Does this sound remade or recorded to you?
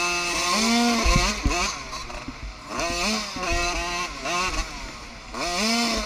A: recorded